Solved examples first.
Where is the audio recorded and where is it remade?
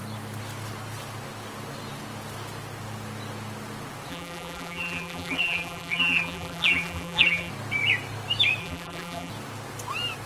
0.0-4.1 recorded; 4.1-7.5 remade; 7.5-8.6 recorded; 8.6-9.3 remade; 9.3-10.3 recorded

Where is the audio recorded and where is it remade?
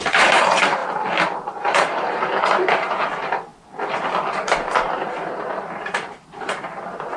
0.0-0.8 remade; 0.8-1.5 recorded; 1.5-3.5 remade; 3.5-4.3 recorded; 4.3-7.2 remade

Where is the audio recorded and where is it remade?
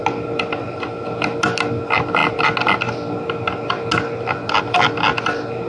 0.0-5.7 recorded